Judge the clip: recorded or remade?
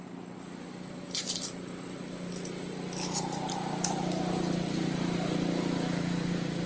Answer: recorded